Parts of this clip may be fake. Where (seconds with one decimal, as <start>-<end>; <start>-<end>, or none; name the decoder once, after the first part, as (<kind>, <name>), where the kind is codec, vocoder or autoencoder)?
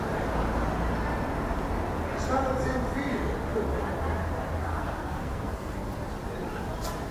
4.6-5.9 (codec, SNAC)